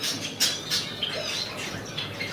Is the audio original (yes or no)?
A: yes